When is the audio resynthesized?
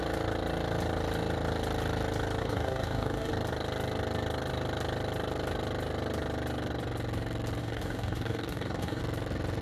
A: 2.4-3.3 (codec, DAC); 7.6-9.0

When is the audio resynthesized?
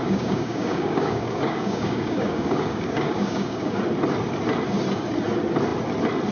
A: 0.0-3.8 (codec, DAC)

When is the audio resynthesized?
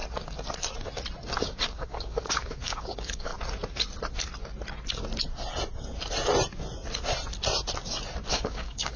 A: 1.4-3.3 (codec, DAC); 8.3-9.0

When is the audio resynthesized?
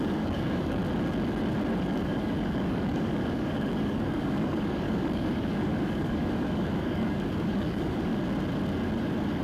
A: 0.0-0.8 (codec, DAC); 1.8-8.1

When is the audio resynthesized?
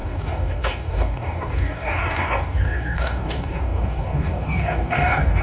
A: 0.0-5.4 (codec, DAC)